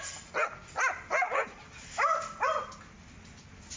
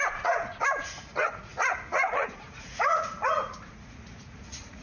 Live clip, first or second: first